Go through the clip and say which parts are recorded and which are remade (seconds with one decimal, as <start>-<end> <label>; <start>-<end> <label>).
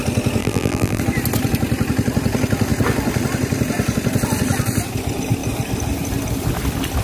0.0-0.4 recorded; 0.4-1.0 remade; 1.0-7.0 recorded